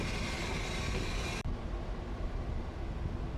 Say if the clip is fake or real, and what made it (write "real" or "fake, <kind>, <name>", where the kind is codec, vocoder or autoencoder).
real